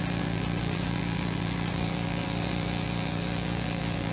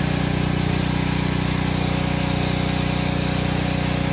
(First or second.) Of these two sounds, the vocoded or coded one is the first